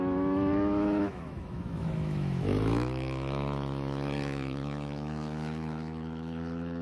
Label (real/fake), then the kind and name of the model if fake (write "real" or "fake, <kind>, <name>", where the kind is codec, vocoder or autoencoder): fake, autoencoder, DAC-VAE